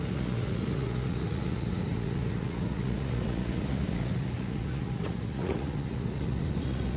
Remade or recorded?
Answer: remade